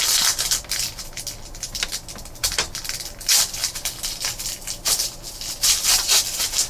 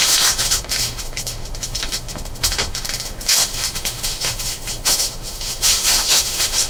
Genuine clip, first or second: first